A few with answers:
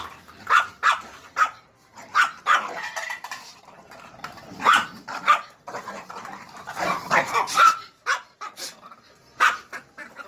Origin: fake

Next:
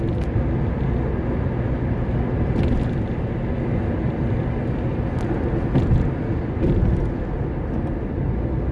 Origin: real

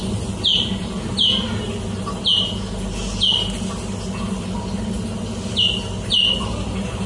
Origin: real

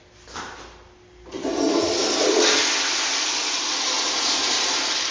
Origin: real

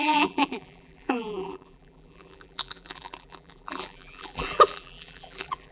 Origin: fake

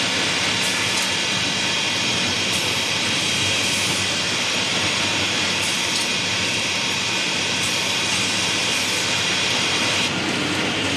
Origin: real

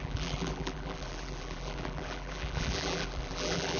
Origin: fake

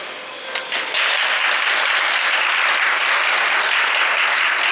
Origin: real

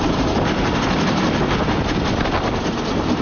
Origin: real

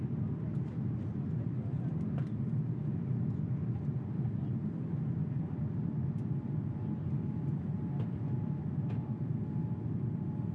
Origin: fake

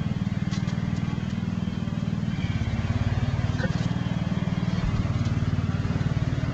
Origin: real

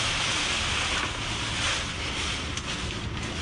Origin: real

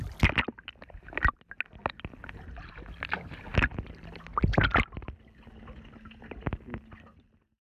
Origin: real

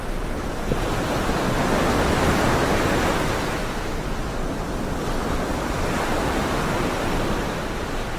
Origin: real